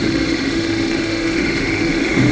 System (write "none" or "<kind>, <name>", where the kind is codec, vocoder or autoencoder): autoencoder, DAC-VAE